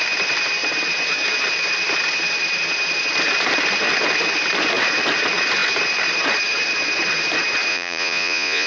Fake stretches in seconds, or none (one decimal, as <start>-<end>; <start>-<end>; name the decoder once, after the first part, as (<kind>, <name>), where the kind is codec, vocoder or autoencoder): 7.7-8.7 (vocoder, Vocos)